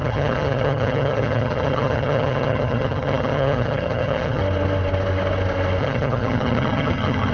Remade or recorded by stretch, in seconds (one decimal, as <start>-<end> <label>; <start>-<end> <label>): 0.0-4.4 remade; 4.4-5.8 recorded; 5.8-7.3 remade